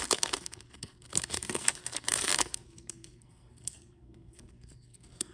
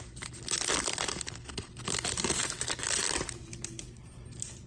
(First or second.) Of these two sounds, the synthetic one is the first